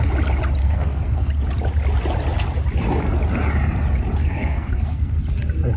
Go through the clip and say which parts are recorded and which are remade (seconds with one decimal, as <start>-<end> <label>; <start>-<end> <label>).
0.0-0.6 recorded; 0.6-1.3 remade; 1.3-4.2 recorded; 4.2-5.2 remade; 5.2-5.8 recorded